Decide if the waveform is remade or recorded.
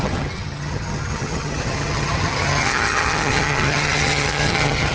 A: remade